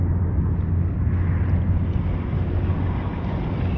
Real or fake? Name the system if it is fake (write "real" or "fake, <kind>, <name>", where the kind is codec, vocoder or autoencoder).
real